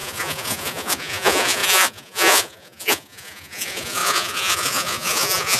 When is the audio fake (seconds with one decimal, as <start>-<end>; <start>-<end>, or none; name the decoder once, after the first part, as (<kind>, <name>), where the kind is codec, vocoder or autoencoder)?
0.0-5.6 (vocoder, Vocos)